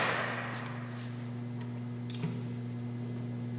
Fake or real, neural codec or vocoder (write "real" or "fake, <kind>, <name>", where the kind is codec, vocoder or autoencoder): real